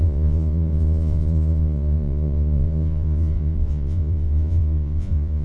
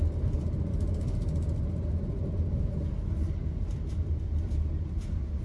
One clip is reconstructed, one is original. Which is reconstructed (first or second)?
first